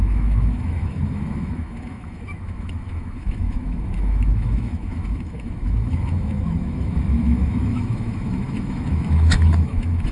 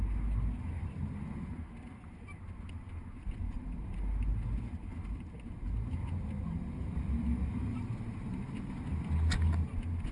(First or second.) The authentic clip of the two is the second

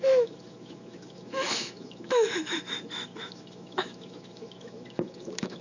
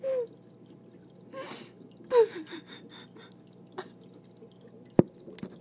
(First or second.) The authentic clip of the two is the second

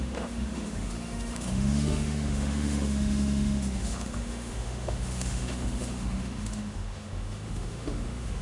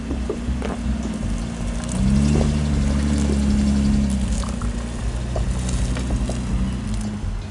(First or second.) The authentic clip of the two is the second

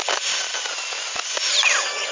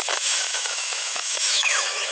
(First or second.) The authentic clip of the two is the first